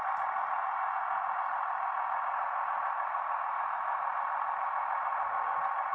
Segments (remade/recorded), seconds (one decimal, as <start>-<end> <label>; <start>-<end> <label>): 0.0-5.9 recorded